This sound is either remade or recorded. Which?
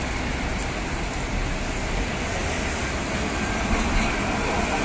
recorded